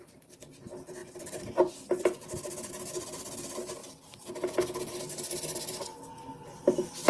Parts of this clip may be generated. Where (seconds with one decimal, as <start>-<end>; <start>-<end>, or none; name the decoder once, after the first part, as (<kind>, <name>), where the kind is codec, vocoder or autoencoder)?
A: none